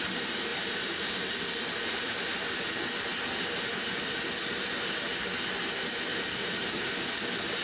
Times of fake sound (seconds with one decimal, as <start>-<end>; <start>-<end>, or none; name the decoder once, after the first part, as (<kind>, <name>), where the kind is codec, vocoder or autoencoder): 0.5-2.6 (vocoder, BigVGAN v2); 6.1-6.9